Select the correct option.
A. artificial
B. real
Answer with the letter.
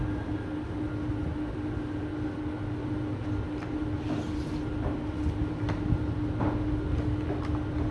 B